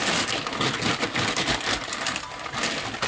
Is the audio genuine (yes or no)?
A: yes